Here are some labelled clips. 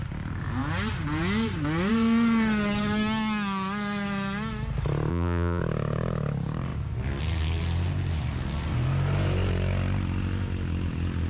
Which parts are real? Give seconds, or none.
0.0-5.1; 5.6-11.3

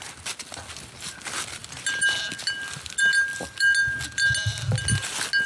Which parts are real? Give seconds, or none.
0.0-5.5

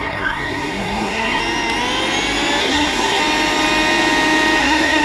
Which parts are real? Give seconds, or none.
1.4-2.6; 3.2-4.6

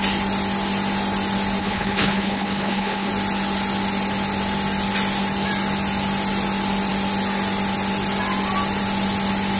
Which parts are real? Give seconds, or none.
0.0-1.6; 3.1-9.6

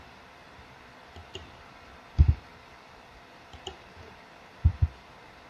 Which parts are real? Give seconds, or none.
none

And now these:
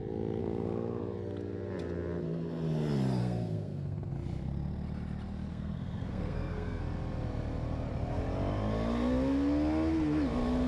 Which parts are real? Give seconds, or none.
0.0-0.4; 1.0-3.2; 4.1-5.5; 6.8-10.7